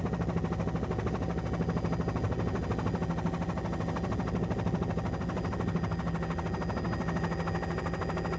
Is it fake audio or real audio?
real